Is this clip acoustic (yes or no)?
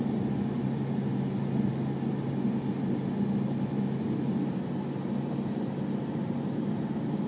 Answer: yes